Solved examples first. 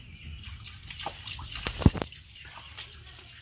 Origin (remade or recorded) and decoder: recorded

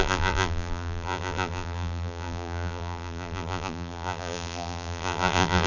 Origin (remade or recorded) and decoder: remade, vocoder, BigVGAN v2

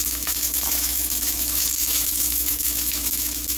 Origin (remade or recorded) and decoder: remade, autoencoder, DAC-VAE